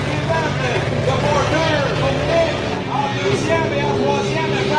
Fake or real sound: real